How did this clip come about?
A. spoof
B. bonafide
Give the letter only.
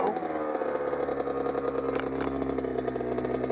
B